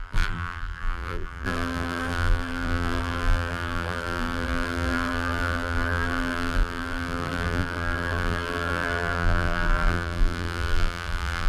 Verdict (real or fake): fake